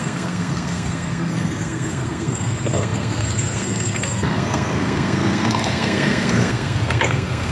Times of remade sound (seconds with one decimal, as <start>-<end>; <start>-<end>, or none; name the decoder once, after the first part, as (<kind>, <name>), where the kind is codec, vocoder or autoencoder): 0.0-7.5 (codec, SNAC)

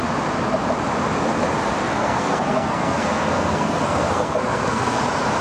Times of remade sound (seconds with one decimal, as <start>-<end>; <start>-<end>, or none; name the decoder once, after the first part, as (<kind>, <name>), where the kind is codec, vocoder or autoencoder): 1.8-5.0 (codec, SNAC)

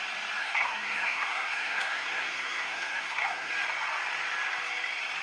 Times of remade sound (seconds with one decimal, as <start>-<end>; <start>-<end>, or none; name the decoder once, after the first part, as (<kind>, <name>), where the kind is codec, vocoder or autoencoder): 0.4-3.5 (codec, SNAC)

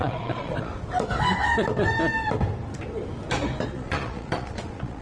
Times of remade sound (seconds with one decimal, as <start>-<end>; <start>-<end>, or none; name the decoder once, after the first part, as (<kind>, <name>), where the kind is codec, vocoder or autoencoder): 0.0-0.7 (vocoder, Vocos); 3.7-5.0

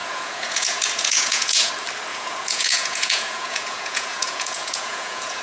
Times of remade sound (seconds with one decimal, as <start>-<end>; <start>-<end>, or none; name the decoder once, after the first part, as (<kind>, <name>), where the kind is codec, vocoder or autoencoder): 0.0-1.7 (vocoder, Vocos); 2.1-5.4

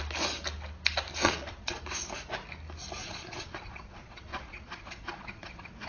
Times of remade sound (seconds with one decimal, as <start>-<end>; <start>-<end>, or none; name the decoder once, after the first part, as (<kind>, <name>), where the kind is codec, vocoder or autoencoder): 1.2-1.8 (vocoder, Vocos); 3.0-5.9